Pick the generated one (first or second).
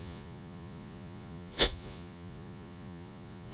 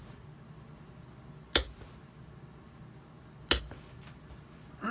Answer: first